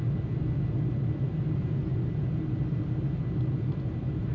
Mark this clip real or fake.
real